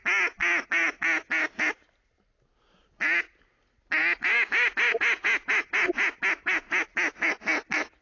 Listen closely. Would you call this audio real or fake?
real